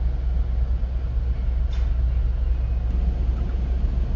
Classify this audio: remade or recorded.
recorded